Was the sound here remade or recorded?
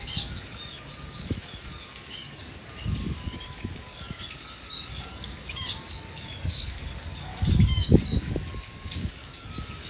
remade